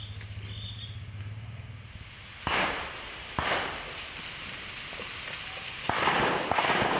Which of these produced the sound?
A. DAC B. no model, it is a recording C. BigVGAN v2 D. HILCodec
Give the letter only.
B